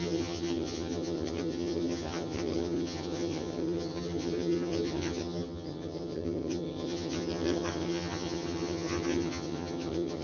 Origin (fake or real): fake